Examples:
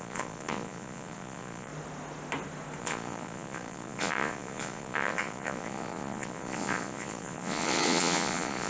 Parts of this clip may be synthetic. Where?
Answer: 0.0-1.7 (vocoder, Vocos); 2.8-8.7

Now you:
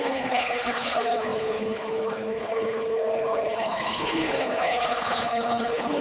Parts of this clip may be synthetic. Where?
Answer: 0.0-6.0 (codec, HILCodec)

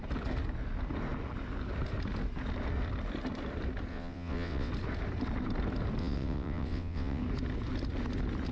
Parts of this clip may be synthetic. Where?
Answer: 3.9-4.7 (vocoder, WaveNeXt); 6.0-7.2

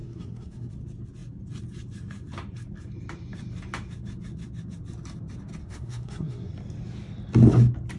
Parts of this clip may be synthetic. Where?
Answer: 0.0-0.7 (codec, SNAC); 5.6-6.5

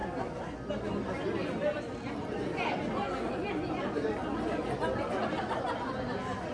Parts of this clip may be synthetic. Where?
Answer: 4.2-5.5 (vocoder, BigVGAN v2)

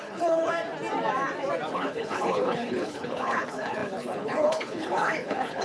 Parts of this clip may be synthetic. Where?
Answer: 0.0-0.5 (codec, HILCodec); 1.7-5.6

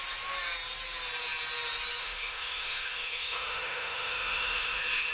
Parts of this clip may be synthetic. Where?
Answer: 2.0-5.1 (autoencoder, DAC-VAE)

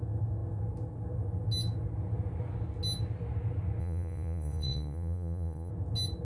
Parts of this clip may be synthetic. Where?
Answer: 3.8-5.7 (vocoder, Vocos)